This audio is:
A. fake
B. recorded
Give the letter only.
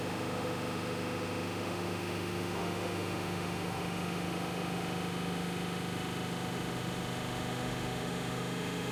A